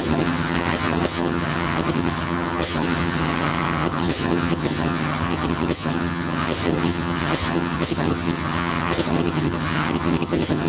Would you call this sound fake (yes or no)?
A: yes